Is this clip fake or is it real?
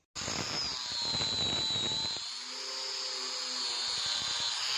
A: real